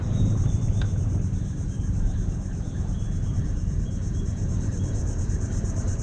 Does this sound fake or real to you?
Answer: fake